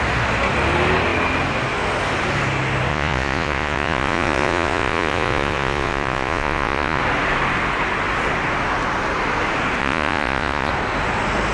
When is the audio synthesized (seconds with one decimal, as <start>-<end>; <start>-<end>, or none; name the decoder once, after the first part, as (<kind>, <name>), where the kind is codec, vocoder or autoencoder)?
2.9-7.0 (vocoder, Vocos); 9.8-10.7

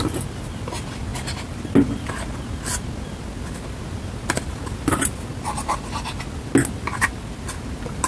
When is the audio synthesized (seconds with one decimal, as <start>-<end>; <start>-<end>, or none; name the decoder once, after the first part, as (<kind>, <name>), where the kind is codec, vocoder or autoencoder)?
none

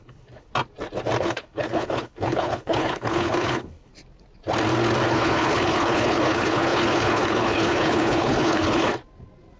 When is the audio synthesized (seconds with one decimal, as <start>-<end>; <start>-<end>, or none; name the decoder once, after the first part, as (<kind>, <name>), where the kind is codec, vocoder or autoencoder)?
0.0-0.5 (codec, HILCodec); 1.2-3.9; 5.1-8.9